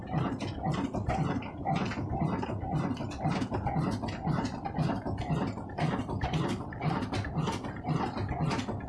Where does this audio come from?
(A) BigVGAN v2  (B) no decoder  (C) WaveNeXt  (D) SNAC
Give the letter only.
B